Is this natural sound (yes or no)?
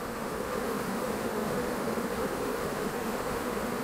no